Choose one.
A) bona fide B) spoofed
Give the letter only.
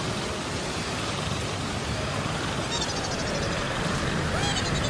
A